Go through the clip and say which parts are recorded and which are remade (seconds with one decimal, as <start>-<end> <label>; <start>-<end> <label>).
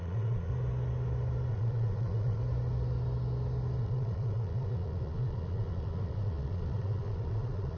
0.0-0.5 remade; 0.5-1.5 recorded; 1.5-2.4 remade; 2.4-3.8 recorded; 3.8-7.8 remade